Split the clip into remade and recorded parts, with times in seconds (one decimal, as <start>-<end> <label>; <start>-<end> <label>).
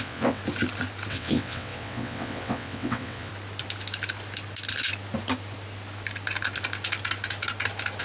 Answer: 0.0-0.4 remade; 0.4-1.1 recorded; 1.1-3.3 remade; 3.3-8.0 recorded